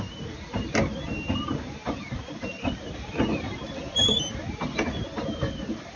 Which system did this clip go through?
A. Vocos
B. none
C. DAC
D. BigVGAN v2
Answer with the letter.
B